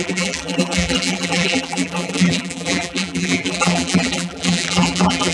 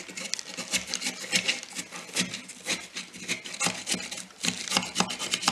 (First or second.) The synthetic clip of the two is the first